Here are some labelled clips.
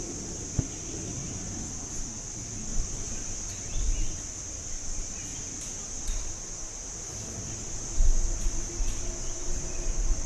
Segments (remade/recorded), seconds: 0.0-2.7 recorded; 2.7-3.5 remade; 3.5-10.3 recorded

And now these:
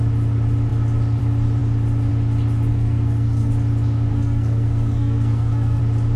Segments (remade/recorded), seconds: 0.0-2.7 recorded; 2.7-3.5 remade; 3.5-4.1 recorded; 4.1-5.8 remade; 5.8-6.2 recorded